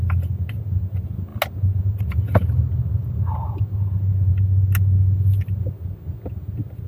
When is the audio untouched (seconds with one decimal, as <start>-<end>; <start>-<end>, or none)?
0.0-6.9